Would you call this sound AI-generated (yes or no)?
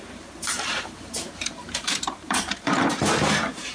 yes